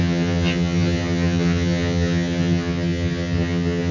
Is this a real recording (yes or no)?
no